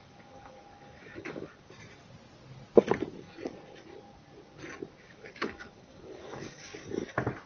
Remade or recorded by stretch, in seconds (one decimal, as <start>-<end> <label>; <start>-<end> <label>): 0.0-1.5 remade; 1.5-5.0 recorded; 5.0-6.7 remade; 6.7-7.5 recorded